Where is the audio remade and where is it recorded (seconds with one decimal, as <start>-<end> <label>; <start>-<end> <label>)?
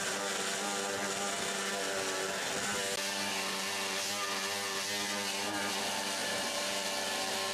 0.0-6.2 recorded; 6.2-6.9 remade; 6.9-7.5 recorded